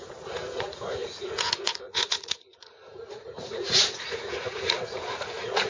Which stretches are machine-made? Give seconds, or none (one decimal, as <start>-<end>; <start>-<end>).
0.0-5.7